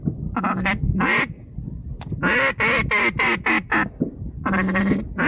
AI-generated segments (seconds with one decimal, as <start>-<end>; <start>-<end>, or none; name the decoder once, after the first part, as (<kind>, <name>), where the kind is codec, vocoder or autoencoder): none

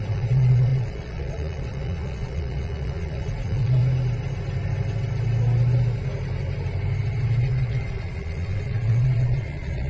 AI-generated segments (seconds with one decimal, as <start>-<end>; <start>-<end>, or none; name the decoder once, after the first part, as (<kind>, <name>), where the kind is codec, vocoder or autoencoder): 0.0-3.8 (vocoder, Vocos); 7.4-9.9